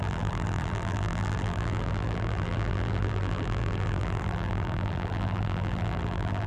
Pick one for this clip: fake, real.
fake